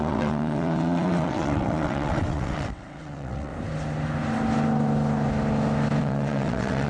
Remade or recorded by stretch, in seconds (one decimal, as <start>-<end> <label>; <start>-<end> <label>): 0.0-3.5 remade; 3.5-6.0 recorded; 6.0-6.9 remade